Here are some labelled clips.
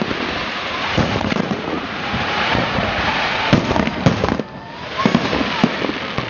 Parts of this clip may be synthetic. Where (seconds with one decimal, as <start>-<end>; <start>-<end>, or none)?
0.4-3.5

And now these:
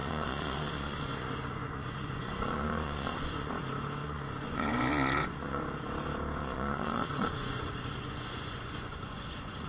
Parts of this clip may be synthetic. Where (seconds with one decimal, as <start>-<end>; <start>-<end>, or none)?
0.0-3.5; 4.0-5.6; 6.4-9.7

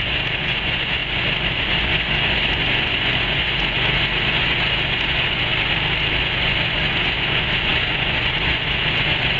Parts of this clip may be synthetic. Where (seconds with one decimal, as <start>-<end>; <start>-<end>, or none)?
0.0-5.5; 6.2-9.4

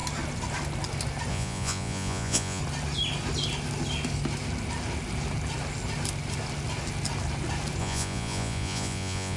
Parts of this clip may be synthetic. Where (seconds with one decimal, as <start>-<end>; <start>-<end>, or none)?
1.3-2.6; 7.8-9.4

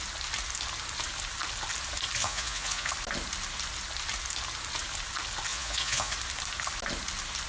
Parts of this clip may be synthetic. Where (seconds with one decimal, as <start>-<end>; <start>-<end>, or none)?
2.2-2.9; 5.5-6.1

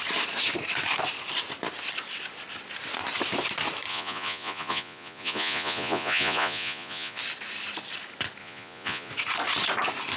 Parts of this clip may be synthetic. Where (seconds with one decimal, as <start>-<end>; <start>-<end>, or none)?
3.9-7.2; 8.4-9.1